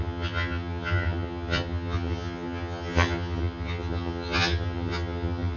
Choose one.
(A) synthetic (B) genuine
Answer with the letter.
A